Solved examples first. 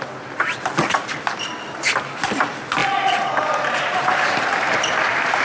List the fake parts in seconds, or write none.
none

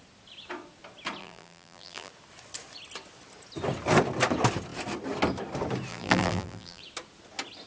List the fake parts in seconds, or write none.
1.2-2.1 (vocoder, BigVGAN v2); 5.9-6.8

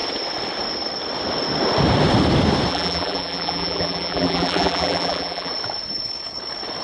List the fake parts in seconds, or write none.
2.7-5.5 (vocoder, BigVGAN v2)